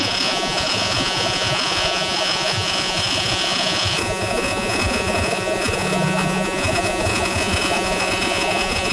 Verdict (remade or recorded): remade